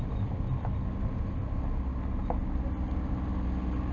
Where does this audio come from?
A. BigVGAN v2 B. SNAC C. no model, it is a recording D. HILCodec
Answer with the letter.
C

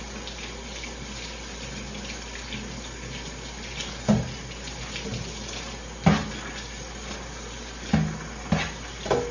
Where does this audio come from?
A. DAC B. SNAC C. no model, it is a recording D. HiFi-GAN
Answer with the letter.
C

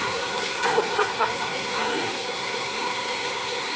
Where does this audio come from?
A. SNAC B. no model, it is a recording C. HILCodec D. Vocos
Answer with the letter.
A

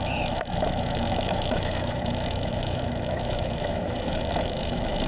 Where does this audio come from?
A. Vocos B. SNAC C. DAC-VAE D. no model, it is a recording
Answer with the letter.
C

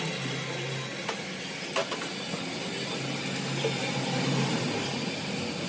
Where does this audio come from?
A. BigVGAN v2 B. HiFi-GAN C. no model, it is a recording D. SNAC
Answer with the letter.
C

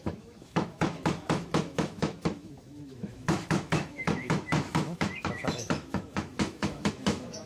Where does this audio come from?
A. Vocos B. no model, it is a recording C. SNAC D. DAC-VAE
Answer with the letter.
D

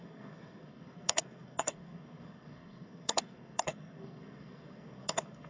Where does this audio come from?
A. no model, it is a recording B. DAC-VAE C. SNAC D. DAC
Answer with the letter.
C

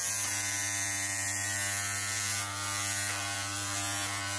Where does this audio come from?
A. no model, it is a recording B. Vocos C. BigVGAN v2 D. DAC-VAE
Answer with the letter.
B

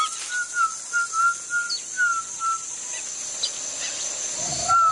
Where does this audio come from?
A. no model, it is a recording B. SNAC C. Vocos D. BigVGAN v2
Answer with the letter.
A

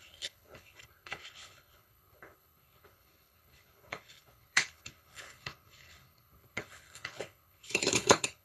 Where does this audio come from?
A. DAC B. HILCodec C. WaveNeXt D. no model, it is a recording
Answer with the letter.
B